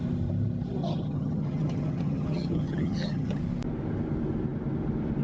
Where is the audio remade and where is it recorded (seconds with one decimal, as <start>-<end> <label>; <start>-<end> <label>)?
0.0-0.8 recorded; 0.8-3.4 remade; 3.4-5.2 recorded